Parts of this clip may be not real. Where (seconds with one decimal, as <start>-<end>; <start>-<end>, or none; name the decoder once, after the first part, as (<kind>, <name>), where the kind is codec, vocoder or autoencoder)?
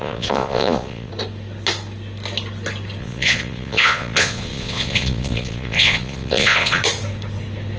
0.0-1.1 (vocoder, Vocos); 3.0-6.8